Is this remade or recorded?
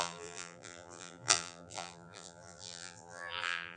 remade